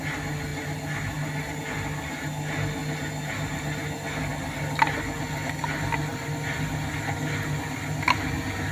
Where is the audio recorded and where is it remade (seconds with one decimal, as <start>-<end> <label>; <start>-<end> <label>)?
0.0-8.7 recorded